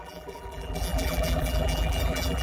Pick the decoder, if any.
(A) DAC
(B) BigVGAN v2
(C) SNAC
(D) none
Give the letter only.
B